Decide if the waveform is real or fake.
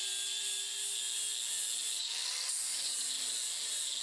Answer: real